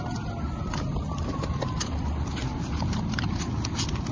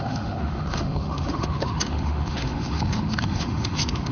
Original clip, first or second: first